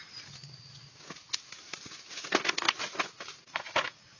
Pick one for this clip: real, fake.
real